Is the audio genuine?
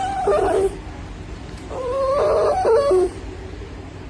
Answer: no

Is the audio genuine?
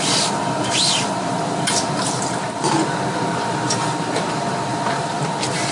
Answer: no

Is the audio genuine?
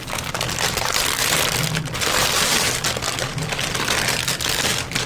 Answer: yes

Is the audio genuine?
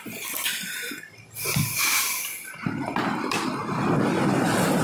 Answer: yes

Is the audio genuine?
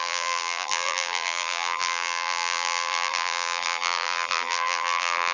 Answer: no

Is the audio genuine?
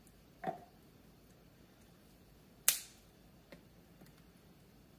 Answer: yes